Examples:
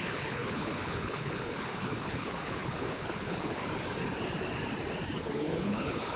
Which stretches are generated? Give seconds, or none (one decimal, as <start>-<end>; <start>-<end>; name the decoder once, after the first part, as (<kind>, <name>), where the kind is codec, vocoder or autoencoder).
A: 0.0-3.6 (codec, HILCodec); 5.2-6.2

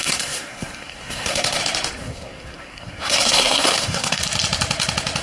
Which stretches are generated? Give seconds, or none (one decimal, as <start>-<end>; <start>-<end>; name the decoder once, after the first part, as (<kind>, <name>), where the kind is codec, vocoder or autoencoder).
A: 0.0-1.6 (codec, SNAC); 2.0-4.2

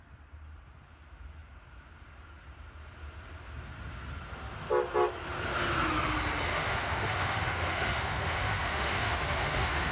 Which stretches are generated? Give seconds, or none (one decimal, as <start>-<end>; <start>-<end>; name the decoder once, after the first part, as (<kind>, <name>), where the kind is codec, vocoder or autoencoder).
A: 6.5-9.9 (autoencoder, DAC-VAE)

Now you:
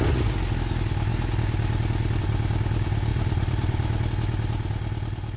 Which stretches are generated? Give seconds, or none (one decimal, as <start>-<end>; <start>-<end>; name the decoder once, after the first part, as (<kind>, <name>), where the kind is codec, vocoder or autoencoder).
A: 3.1-4.1 (vocoder, BigVGAN v2)